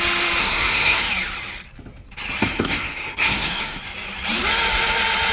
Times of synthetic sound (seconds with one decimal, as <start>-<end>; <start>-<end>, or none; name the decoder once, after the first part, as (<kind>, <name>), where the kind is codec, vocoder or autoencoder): 0.4-1.0 (codec, SNAC); 2.4-3.8